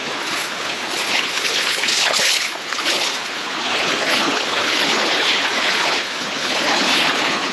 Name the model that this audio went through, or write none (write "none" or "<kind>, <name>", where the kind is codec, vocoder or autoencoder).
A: codec, HILCodec